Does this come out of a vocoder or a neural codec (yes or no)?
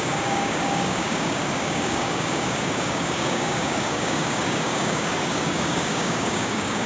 yes